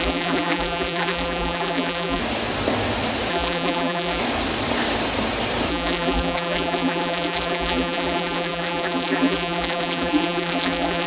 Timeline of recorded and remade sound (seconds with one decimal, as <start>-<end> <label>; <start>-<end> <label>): 0.0-2.2 remade; 2.2-3.3 recorded; 3.3-4.2 remade; 4.2-5.7 recorded; 5.7-11.1 remade